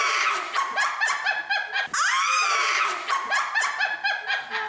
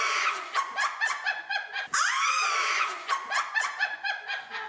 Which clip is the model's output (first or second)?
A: second